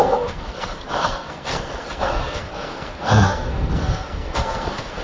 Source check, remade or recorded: remade